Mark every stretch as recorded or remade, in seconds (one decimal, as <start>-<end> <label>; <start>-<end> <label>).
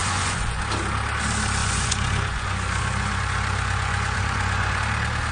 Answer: 0.0-0.6 remade; 0.6-1.6 recorded; 1.6-4.8 remade; 4.8-5.3 recorded